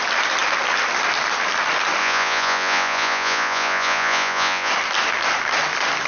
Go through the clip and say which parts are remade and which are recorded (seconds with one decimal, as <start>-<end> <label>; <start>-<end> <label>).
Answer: 0.0-2.0 recorded; 2.0-4.7 remade; 4.7-6.1 recorded